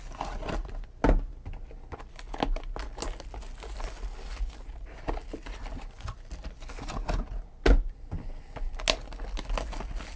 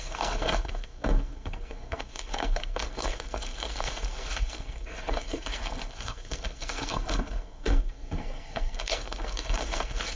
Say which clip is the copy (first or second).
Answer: second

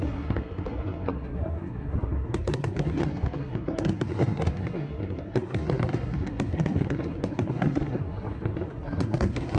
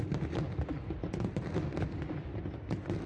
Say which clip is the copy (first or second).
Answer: first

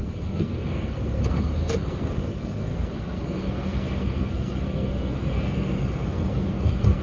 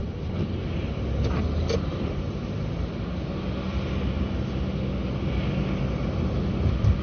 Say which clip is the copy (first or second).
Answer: first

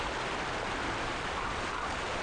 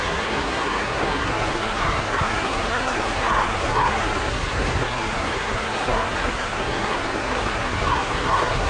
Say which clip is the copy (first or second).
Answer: second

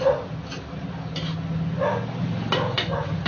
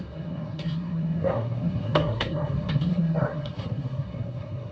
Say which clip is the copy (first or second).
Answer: second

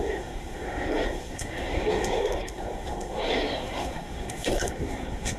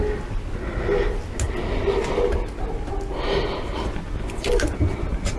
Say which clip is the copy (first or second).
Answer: first